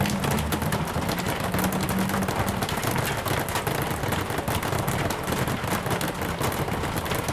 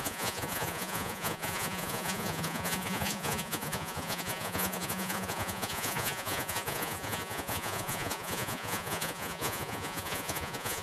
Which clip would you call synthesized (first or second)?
second